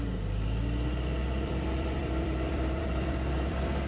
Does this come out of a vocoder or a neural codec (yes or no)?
yes